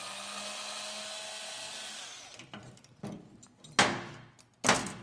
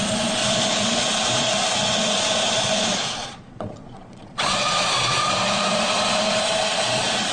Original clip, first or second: first